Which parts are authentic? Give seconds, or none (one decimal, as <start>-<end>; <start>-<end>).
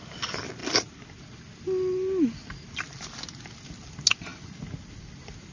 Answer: 0.0-5.5